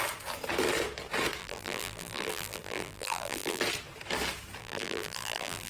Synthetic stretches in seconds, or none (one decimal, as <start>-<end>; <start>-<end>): 1.4-3.6; 4.6-5.7